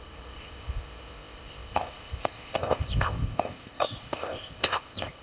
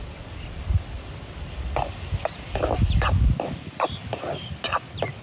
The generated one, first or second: first